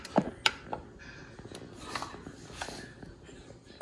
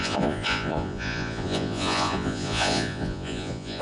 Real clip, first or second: first